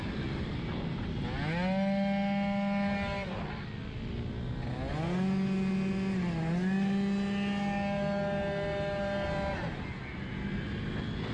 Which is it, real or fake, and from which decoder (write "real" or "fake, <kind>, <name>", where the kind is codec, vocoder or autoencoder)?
real